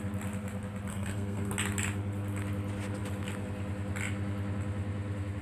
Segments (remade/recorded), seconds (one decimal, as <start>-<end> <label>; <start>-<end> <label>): 0.0-0.9 recorded; 0.9-1.5 remade; 1.5-5.4 recorded